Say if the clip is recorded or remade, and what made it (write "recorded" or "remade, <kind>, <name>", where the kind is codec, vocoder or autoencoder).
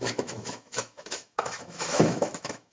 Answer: remade, autoencoder, DAC-VAE